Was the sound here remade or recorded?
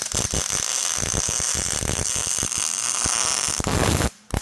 remade